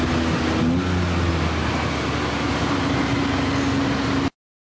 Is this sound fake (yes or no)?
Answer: no